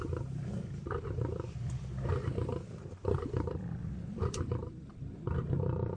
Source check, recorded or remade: remade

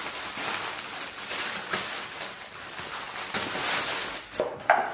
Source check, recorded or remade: recorded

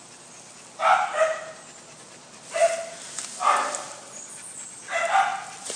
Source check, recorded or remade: recorded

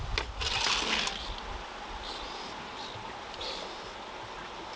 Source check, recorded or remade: recorded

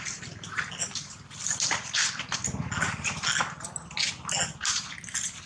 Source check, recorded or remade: recorded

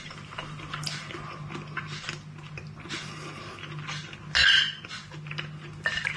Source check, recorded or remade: recorded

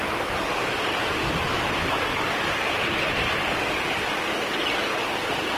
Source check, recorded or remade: recorded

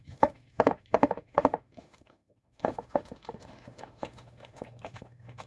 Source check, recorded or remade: remade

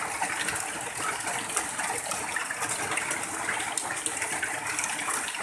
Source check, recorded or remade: recorded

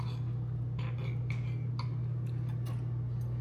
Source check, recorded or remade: recorded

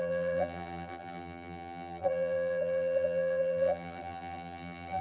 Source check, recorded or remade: remade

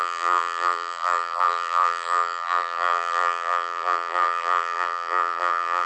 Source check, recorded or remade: remade